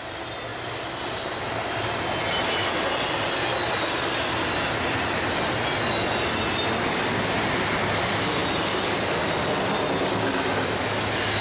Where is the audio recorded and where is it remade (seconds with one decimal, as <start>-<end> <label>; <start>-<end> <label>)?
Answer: 0.0-11.4 recorded

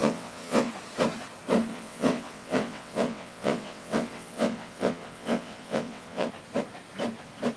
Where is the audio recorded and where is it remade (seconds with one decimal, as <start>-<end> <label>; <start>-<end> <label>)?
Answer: 0.0-0.7 remade; 0.7-1.7 recorded; 1.7-6.3 remade; 6.3-7.6 recorded

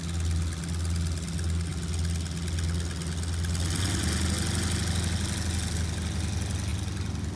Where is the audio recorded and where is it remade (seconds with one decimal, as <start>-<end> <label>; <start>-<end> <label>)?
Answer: 0.0-7.4 recorded

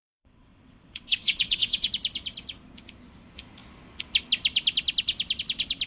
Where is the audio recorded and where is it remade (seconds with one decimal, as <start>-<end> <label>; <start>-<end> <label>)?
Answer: 0.0-1.9 remade; 1.9-5.9 recorded

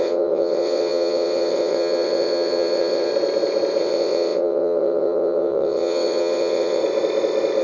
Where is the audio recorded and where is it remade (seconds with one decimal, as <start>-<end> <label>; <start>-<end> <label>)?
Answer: 0.0-3.1 remade; 3.1-3.8 recorded; 3.8-6.8 remade; 6.8-7.6 recorded

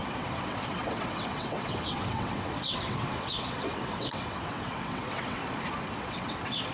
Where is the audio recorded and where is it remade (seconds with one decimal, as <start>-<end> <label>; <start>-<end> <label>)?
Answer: 0.0-5.4 remade; 5.4-6.0 recorded; 6.0-6.7 remade